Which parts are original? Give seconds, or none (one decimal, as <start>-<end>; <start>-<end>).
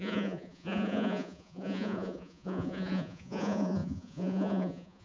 none